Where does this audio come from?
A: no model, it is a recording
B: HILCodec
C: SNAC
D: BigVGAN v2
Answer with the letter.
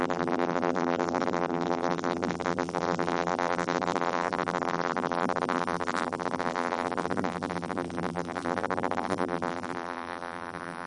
D